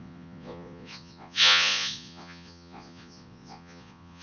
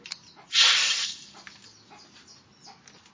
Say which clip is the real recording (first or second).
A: second